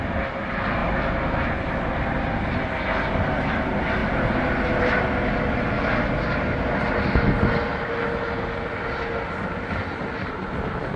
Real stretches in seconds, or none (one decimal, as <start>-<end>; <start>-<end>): 0.0-11.0

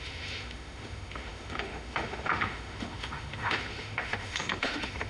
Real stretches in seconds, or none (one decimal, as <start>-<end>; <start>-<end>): none

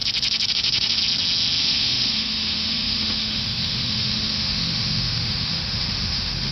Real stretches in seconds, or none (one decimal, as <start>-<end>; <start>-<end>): 0.0-0.5; 1.0-1.6

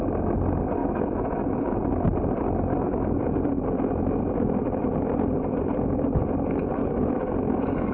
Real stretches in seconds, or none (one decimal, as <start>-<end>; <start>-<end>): 0.0-0.8; 1.8-6.8

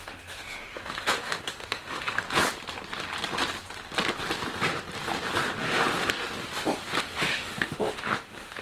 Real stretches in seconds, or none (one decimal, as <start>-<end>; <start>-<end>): 2.2-7.0

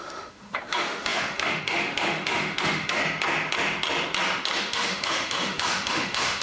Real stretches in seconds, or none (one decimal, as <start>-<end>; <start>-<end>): 3.0-4.6

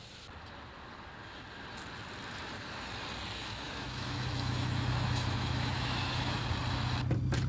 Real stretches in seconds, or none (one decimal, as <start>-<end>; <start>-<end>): 0.0-3.4; 6.5-7.5